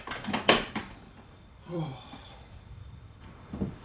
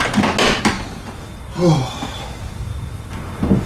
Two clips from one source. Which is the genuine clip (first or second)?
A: second